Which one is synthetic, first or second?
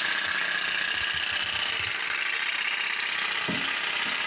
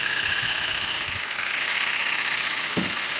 second